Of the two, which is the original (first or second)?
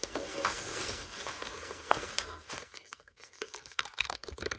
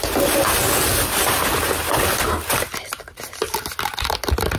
second